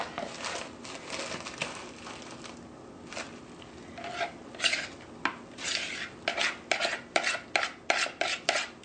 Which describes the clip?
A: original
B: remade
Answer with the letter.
A